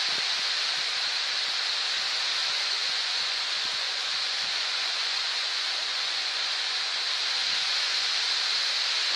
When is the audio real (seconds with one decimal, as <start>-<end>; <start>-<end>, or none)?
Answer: 0.0-2.4; 7.0-7.4; 8.1-9.2